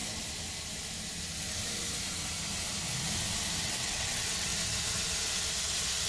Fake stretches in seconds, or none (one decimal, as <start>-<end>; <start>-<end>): 3.6-4.5